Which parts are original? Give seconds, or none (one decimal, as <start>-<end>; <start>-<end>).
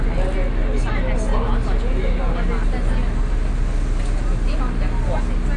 0.0-5.6